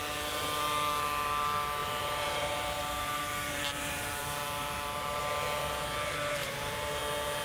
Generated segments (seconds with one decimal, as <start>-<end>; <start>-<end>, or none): 1.8-5.2; 6.4-7.0